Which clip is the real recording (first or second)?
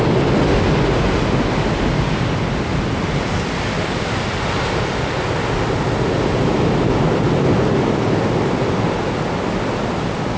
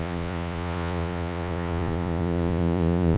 first